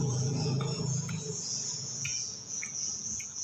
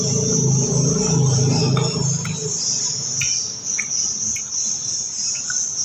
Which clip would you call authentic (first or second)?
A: second